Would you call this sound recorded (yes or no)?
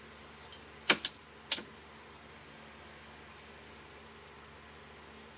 yes